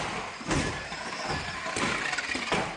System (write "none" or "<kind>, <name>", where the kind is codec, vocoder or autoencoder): none